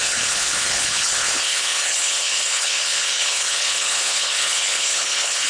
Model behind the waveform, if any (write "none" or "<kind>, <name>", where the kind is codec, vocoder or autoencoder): codec, HILCodec